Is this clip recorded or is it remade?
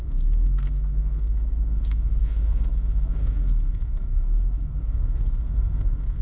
remade